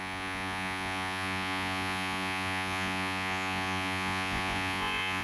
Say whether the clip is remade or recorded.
remade